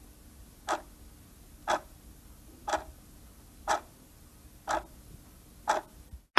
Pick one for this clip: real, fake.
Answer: real